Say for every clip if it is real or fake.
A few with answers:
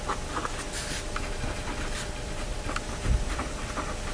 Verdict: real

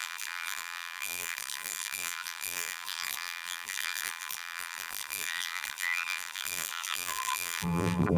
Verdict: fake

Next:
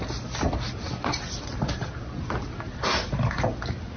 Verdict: real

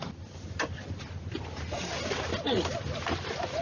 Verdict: real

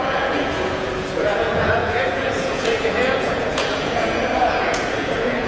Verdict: fake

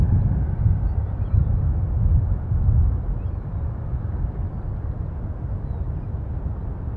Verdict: real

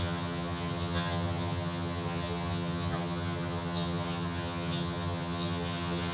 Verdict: fake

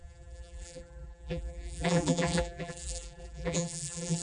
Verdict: fake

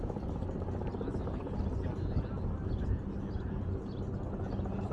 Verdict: real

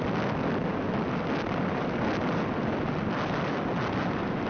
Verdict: real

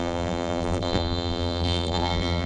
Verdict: fake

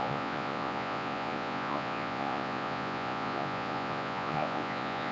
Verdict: fake